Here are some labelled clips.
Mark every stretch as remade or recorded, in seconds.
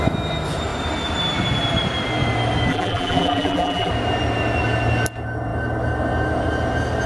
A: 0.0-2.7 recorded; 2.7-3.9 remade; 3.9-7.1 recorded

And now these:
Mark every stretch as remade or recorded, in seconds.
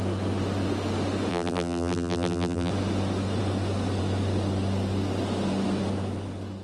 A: 0.0-1.3 recorded; 1.3-2.7 remade; 2.7-6.6 recorded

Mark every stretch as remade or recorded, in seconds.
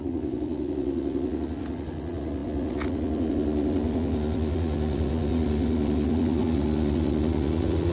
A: 0.0-7.9 remade